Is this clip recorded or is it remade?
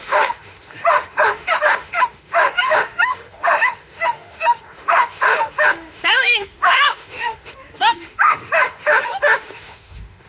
remade